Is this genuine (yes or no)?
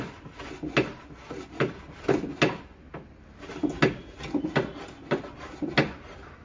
yes